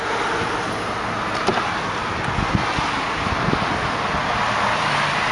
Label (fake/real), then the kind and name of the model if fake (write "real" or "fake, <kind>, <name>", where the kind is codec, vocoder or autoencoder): real